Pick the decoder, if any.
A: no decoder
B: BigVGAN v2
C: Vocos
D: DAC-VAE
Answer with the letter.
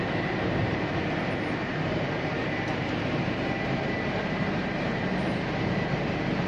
B